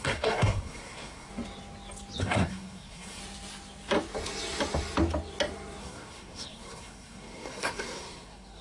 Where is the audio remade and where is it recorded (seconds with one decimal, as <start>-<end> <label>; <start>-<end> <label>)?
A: 0.0-1.3 remade; 1.3-2.2 recorded; 2.2-3.2 remade; 3.2-5.8 recorded; 5.8-8.6 remade